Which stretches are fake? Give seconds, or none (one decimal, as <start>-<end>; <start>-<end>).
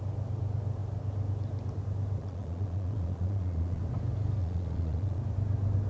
2.2-3.8; 4.4-5.2